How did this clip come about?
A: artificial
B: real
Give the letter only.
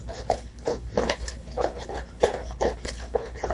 A